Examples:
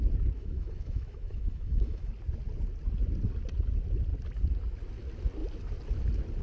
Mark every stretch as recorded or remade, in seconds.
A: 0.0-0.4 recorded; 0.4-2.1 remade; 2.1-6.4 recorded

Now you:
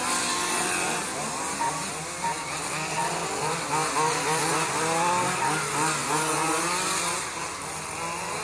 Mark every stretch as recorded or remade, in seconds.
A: 0.0-8.4 recorded

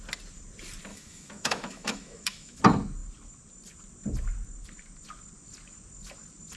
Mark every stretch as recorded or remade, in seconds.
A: 0.0-0.9 recorded; 0.9-2.6 remade; 2.6-6.6 recorded

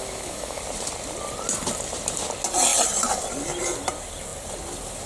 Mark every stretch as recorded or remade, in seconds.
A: 0.0-0.6 remade; 0.6-5.1 recorded